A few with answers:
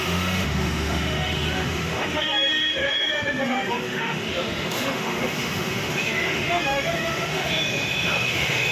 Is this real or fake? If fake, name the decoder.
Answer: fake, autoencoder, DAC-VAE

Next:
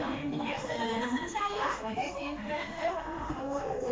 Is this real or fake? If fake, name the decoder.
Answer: fake, autoencoder, DAC-VAE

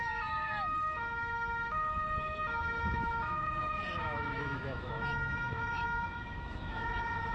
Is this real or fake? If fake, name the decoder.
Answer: fake, autoencoder, DAC-VAE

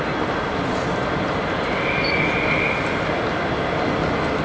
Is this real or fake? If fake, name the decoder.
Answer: real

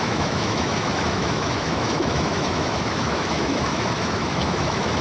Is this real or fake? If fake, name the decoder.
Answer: fake, autoencoder, DAC-VAE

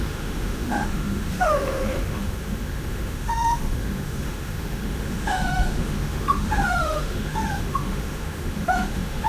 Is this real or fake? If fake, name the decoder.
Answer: fake, autoencoder, DAC-VAE